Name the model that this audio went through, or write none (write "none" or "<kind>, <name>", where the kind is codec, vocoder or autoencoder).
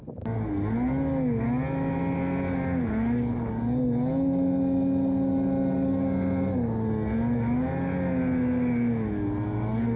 none